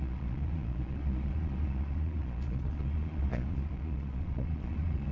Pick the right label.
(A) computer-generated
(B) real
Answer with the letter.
A